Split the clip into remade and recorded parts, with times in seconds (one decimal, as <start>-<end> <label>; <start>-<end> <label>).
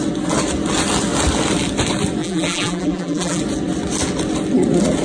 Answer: 0.0-2.2 recorded; 2.2-3.4 remade; 3.4-5.0 recorded